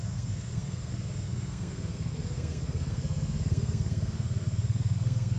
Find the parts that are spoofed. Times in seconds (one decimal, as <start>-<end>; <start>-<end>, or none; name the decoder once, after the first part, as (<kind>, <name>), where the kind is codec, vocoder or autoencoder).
0.0-5.4 (codec, SNAC)